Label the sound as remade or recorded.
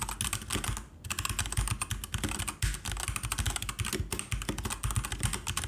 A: recorded